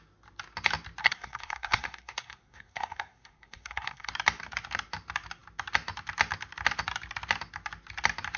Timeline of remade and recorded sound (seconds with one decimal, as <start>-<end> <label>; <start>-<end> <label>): 0.0-1.0 recorded; 1.0-4.1 remade; 4.1-8.4 recorded